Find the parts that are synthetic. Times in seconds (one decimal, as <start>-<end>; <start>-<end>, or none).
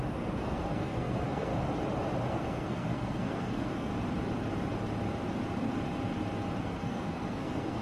0.0-1.5; 2.3-3.9; 6.6-7.8